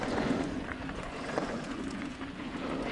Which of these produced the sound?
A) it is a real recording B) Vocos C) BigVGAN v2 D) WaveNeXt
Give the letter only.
B